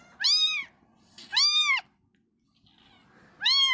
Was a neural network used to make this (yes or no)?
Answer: no